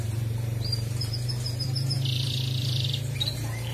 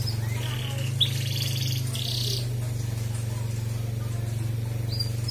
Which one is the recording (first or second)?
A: second